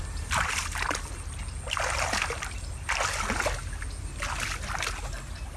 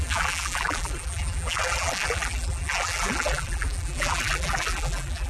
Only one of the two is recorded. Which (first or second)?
first